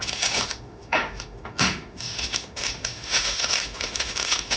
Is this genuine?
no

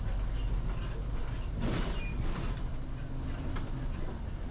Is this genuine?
yes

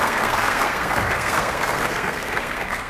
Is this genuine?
no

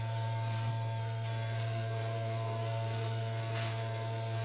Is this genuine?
no